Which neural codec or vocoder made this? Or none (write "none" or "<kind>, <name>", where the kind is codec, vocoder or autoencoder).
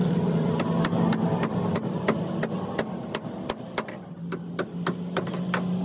none